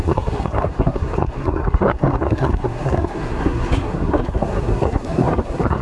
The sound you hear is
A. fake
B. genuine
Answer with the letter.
A